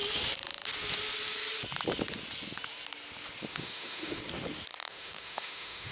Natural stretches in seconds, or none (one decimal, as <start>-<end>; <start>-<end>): 0.0-3.5; 4.2-4.9